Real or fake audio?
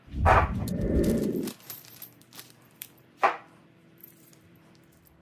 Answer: fake